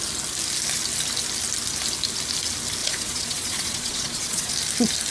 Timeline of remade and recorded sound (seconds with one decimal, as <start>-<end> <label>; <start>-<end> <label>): 0.0-2.8 recorded; 2.8-4.5 remade; 4.5-5.1 recorded